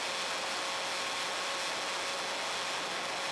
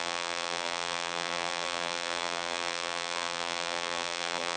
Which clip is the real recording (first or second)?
first